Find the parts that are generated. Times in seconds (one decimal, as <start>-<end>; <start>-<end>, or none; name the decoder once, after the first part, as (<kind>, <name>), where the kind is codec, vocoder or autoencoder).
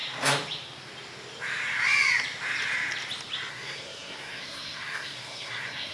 3.5-5.9 (codec, SNAC)